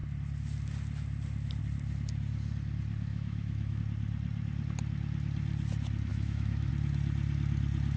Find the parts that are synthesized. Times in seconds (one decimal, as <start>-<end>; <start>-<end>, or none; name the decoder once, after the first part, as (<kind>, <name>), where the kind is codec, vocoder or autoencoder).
3.1-3.8 (autoencoder, DAC-VAE); 6.1-6.7